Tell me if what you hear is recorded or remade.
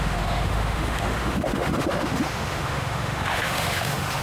remade